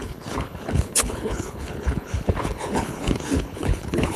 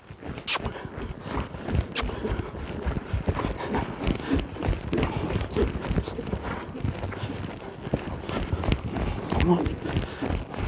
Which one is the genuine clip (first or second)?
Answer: second